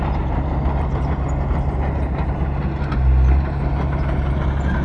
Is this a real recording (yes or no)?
yes